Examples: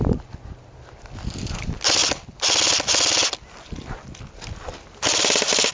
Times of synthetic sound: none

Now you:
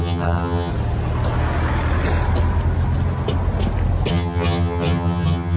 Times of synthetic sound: 0.0-0.7 (vocoder, HiFi-GAN); 4.1-5.6

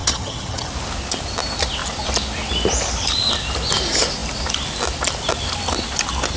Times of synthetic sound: 0.0-0.7 (vocoder, HiFi-GAN)